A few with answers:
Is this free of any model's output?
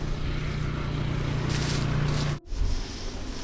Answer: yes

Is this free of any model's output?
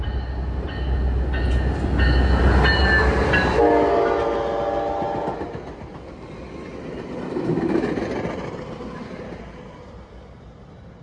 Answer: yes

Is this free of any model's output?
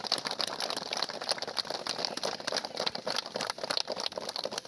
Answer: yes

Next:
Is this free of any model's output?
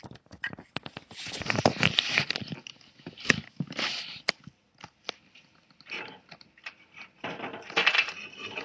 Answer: yes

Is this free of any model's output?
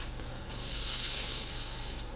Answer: no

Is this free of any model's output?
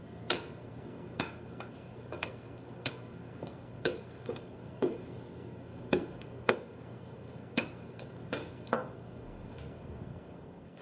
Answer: no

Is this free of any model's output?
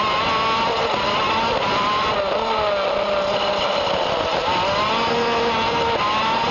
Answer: yes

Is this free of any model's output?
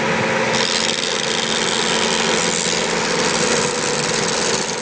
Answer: yes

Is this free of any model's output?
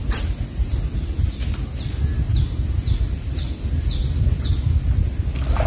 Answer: yes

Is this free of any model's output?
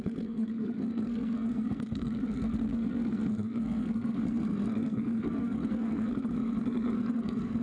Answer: no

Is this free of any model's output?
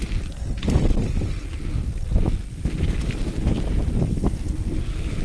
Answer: yes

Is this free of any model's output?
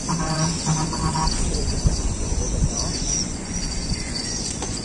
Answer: no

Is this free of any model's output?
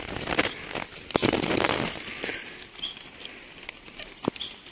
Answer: yes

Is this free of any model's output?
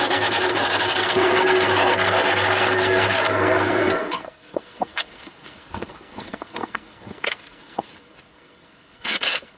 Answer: no